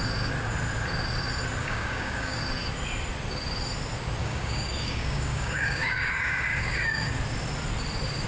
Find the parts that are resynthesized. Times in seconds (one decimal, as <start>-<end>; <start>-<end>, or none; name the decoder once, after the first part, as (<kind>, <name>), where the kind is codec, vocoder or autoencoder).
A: 1.6-2.4 (codec, DAC); 4.2-7.2